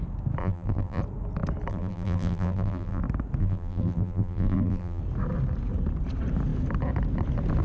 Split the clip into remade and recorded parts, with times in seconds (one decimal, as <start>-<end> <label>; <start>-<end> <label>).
0.0-0.4 recorded; 0.4-1.0 remade; 1.0-1.7 recorded; 1.7-3.0 remade; 3.0-3.4 recorded; 3.4-5.0 remade; 5.0-7.6 recorded